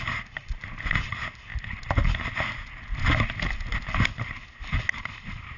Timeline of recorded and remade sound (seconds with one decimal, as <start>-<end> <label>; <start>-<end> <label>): 0.0-5.6 recorded